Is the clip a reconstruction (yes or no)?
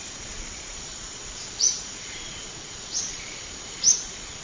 yes